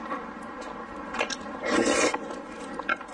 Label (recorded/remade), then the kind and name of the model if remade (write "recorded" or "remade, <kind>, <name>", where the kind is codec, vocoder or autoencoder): recorded